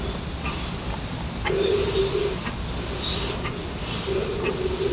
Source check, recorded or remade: recorded